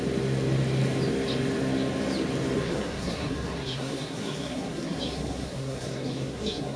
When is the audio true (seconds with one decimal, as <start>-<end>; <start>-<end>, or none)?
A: 0.0-2.6